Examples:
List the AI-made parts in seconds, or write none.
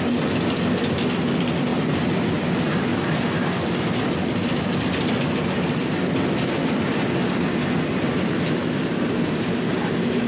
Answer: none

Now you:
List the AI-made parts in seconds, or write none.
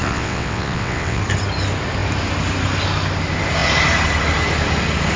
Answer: 0.0-1.2 (vocoder, WaveNeXt)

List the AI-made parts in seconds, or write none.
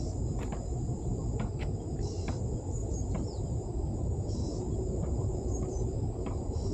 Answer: 0.0-6.7 (vocoder, BigVGAN v2)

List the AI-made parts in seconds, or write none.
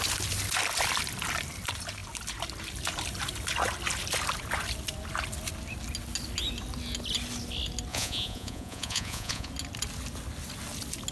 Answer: 7.9-9.5 (vocoder, Vocos)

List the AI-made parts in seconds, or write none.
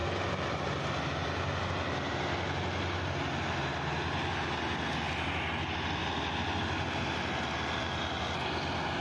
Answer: none